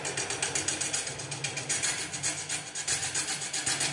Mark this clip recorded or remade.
recorded